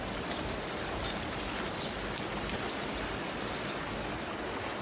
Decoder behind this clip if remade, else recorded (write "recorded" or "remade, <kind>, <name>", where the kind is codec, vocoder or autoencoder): recorded